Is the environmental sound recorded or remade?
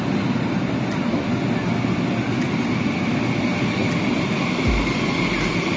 recorded